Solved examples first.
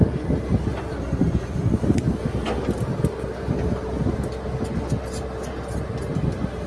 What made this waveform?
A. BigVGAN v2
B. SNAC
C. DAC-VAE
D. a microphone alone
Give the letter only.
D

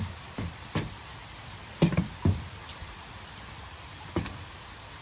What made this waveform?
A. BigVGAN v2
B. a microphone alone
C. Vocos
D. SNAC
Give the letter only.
A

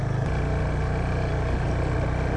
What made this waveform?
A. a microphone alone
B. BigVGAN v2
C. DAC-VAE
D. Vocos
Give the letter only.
A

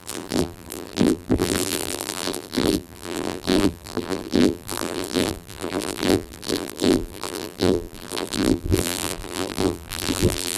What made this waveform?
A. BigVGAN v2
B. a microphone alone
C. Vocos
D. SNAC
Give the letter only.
A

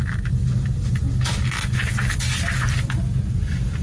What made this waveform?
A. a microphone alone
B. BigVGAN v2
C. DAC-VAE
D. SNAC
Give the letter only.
A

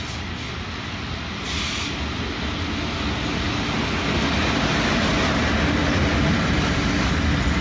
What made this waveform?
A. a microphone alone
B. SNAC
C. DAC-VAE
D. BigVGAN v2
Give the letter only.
A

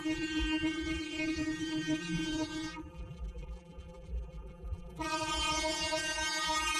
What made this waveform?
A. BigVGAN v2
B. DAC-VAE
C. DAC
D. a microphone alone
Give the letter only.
A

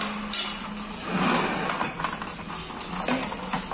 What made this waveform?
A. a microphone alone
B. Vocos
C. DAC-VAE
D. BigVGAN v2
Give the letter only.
A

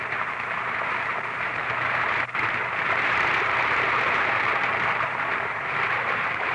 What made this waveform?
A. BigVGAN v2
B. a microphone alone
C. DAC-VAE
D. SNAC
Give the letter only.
A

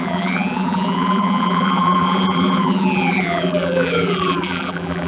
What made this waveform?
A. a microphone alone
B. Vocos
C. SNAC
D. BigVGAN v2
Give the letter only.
D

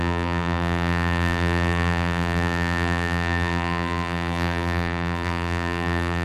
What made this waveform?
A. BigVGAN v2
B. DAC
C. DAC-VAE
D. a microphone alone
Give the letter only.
A